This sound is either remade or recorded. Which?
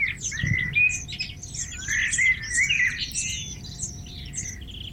recorded